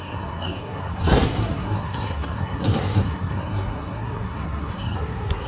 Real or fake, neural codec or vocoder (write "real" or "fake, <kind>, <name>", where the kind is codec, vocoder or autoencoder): fake, codec, SNAC